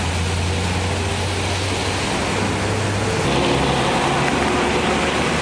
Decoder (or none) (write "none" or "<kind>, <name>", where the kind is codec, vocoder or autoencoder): none